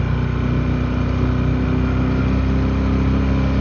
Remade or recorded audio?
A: recorded